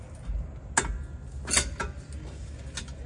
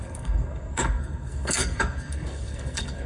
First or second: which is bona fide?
first